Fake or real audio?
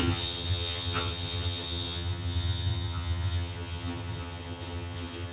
fake